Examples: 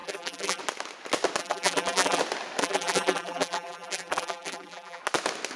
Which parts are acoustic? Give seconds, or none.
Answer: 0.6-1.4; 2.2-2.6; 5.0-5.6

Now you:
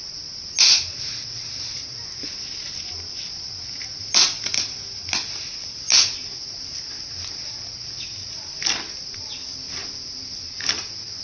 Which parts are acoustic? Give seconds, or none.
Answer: 0.0-11.2

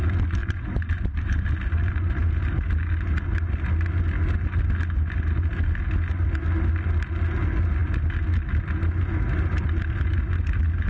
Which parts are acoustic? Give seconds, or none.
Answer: 0.0-0.4; 1.5-10.9

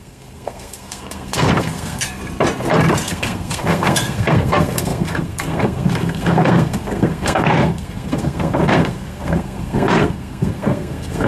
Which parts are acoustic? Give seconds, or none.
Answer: 2.2-3.0

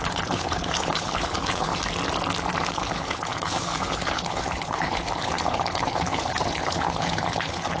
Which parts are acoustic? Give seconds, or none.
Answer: 1.7-2.7

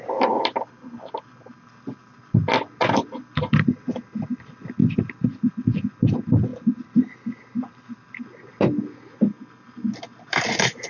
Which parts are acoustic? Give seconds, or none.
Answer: 0.0-4.8; 5.5-10.9

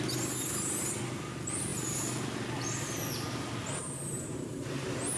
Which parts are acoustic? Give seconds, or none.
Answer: 0.0-5.2